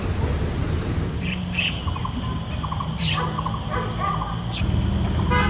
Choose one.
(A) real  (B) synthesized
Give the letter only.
A